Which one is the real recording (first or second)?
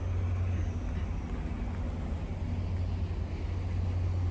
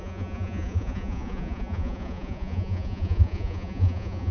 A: first